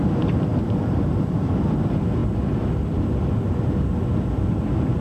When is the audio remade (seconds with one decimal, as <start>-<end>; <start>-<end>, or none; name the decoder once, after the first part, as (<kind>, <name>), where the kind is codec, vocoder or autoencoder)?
0.5-1.6 (vocoder, BigVGAN v2); 2.2-3.3